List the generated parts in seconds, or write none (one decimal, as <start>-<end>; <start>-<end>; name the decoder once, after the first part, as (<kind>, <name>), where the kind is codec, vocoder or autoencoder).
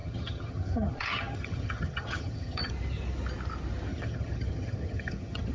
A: 0.0-2.7 (vocoder, HiFi-GAN); 3.9-5.5